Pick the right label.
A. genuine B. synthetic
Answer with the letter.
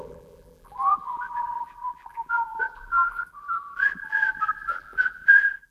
B